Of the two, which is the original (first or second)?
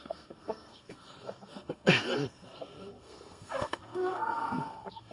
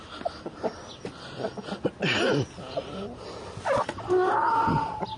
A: second